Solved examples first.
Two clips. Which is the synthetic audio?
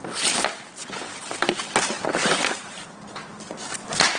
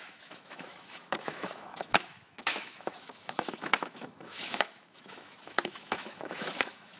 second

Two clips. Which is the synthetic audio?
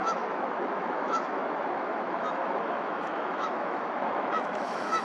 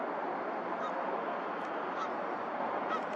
first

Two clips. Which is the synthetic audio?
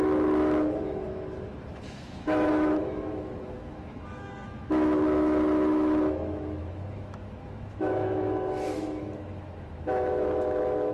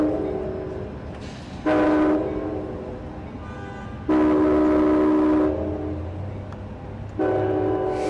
first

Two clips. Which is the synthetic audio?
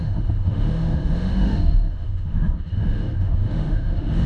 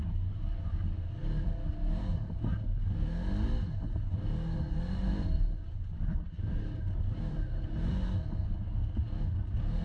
first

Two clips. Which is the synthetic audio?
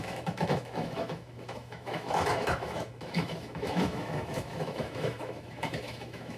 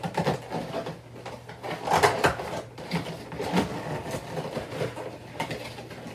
first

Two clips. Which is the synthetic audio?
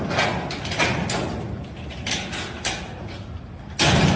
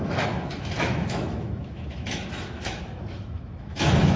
second